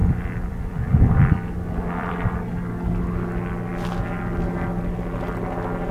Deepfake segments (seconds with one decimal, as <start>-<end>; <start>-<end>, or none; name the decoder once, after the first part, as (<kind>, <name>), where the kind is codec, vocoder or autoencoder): 0.0-1.2 (vocoder, BigVGAN v2); 2.0-2.6

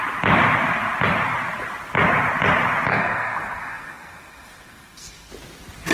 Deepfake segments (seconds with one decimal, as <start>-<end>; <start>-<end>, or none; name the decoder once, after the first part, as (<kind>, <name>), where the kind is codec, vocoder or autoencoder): 2.9-5.3 (codec, SNAC)